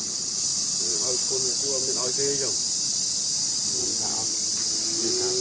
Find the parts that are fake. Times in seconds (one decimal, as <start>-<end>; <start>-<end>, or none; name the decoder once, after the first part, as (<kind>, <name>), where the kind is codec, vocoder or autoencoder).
none